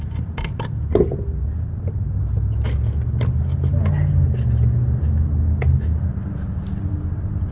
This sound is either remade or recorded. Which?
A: recorded